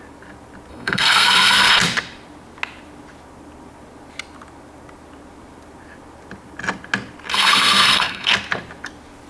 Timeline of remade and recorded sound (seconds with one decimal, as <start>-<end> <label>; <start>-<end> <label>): 0.0-0.7 recorded; 0.7-1.8 remade; 1.8-7.3 recorded; 7.3-8.3 remade; 8.3-9.3 recorded